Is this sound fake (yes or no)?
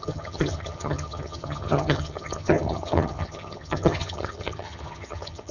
yes